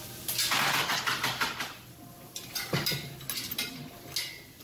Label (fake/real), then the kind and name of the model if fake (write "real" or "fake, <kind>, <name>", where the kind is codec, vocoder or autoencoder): real